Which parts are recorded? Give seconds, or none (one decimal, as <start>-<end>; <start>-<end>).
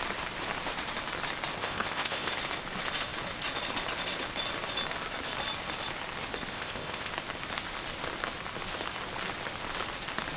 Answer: 0.0-1.6; 2.3-6.5; 7.1-10.4